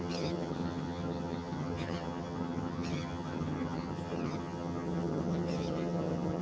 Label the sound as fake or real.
fake